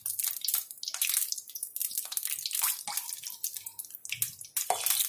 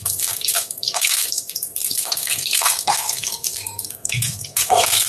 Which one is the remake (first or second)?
second